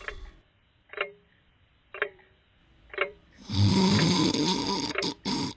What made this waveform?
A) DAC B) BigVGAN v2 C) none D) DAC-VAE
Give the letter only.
B